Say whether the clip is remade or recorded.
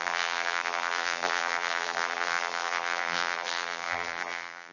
remade